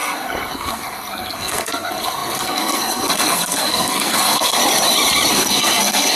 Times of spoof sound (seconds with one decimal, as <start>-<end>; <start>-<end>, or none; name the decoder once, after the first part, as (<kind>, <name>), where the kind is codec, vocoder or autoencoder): 0.0-4.6 (codec, SNAC); 5.3-6.2